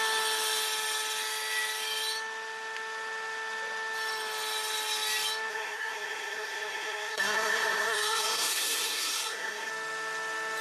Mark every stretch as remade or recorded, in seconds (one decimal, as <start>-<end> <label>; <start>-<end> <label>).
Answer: 0.0-5.5 recorded; 5.5-9.7 remade; 9.7-10.6 recorded